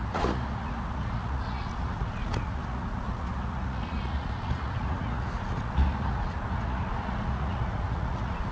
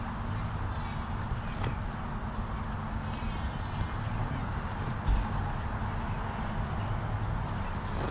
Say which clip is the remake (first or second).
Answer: first